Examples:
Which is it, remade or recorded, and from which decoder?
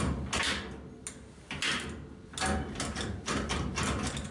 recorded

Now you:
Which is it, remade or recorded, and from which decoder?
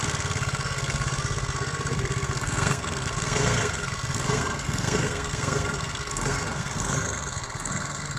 remade, codec, SNAC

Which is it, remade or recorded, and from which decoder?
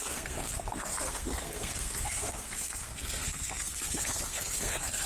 remade, codec, SNAC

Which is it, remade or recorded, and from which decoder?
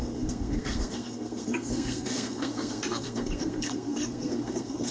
remade, codec, SNAC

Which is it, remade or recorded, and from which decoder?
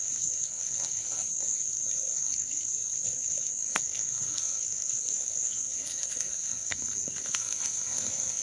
remade, codec, SNAC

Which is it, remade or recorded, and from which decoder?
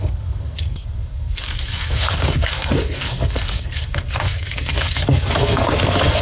remade, codec, SNAC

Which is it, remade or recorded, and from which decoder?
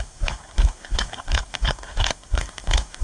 remade, codec, SNAC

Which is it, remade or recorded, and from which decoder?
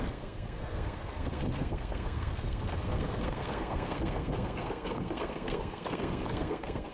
remade, codec, SNAC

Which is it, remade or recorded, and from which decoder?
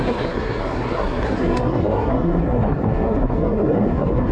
remade, codec, SNAC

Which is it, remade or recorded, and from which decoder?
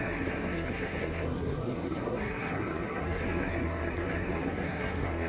remade, codec, SNAC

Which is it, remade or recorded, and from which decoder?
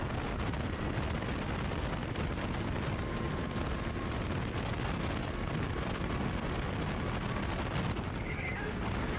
recorded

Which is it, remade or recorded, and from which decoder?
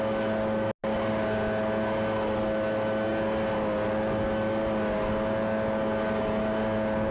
recorded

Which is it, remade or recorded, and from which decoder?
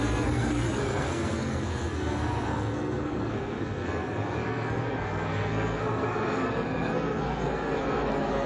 remade, codec, SNAC